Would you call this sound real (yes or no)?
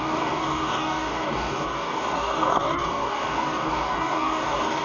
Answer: no